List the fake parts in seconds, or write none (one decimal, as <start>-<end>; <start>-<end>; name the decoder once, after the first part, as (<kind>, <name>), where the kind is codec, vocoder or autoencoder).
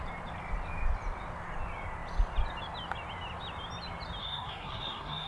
4.2-5.3 (codec, SNAC)